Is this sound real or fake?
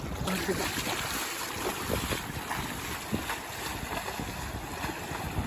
real